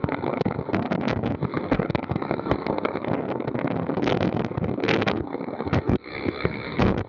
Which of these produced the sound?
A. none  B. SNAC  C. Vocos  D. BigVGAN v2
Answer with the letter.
B